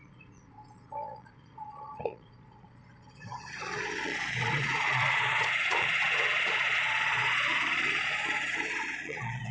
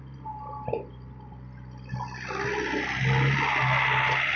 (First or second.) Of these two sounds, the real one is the second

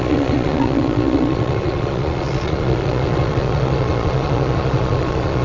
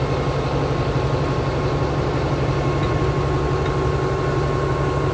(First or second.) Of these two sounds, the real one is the second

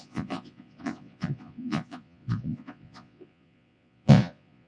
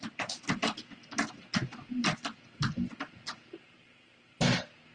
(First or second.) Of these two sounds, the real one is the second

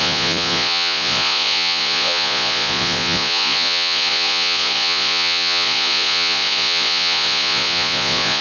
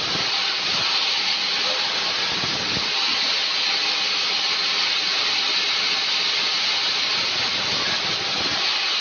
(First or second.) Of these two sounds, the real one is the second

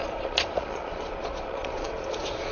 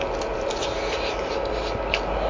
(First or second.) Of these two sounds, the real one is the second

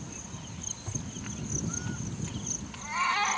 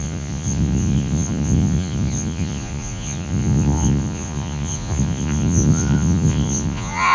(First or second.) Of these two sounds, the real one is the first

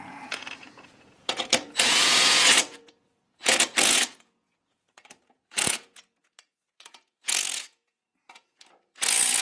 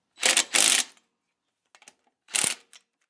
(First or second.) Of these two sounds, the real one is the second